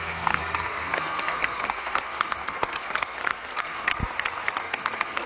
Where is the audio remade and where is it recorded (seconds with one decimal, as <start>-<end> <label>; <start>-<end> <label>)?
0.0-4.0 remade; 4.0-4.6 recorded; 4.6-5.3 remade